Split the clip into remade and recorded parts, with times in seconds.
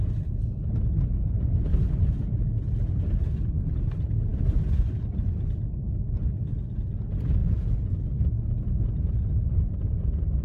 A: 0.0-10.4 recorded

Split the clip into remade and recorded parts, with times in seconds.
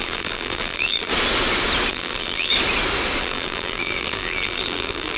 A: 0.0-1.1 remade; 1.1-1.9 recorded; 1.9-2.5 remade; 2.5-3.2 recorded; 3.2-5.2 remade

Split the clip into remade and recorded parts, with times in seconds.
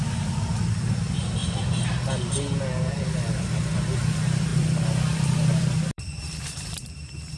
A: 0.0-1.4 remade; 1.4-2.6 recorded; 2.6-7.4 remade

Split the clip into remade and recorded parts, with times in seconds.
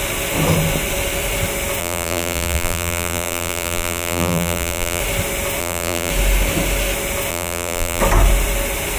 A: 0.0-1.8 recorded; 1.8-5.0 remade; 5.0-5.6 recorded; 5.6-6.1 remade; 6.1-7.3 recorded; 7.3-8.0 remade; 8.0-9.0 recorded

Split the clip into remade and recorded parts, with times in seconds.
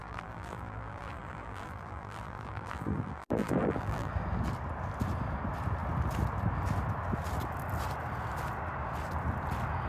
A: 0.0-4.1 remade; 4.1-9.9 recorded